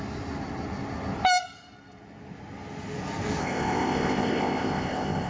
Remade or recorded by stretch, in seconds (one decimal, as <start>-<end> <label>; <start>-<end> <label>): 0.0-3.4 recorded; 3.4-5.3 remade